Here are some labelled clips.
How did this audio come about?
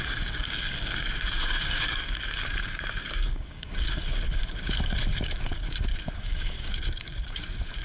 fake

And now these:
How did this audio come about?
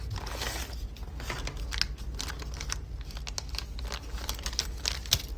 real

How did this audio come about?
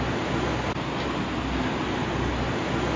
real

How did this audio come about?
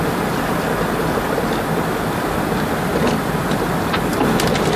real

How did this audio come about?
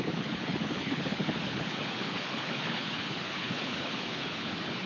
fake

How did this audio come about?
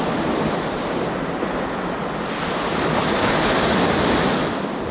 real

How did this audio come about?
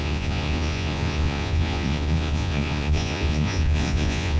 fake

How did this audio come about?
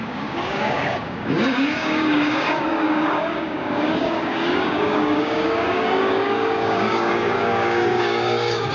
fake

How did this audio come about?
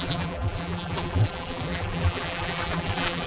fake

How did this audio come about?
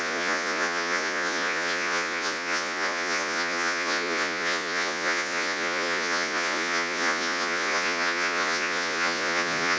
fake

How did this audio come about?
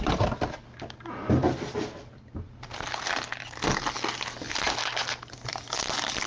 real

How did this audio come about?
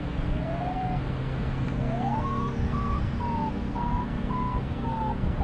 fake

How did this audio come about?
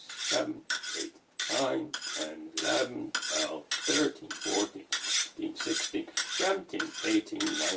real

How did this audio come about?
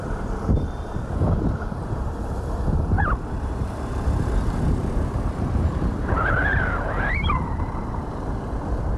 fake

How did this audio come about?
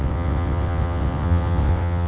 fake